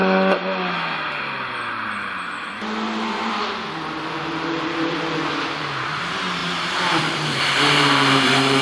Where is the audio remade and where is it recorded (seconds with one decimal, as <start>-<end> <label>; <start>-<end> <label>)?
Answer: 0.0-4.1 recorded; 4.1-8.6 remade